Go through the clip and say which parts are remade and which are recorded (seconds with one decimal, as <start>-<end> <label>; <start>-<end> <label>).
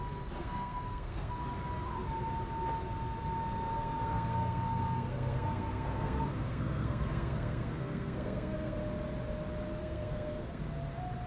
0.0-0.4 recorded; 0.4-1.3 remade; 1.3-3.7 recorded; 3.7-8.8 remade; 8.8-9.8 recorded; 9.8-10.6 remade; 10.6-11.3 recorded